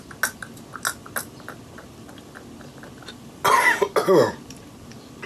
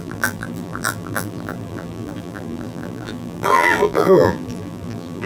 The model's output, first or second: second